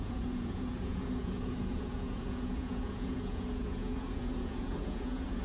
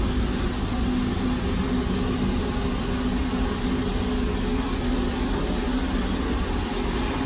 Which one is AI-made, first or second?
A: first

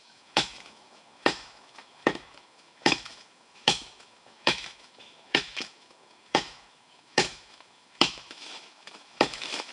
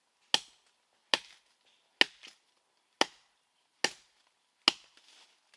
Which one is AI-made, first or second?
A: first